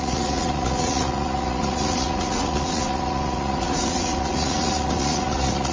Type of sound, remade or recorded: remade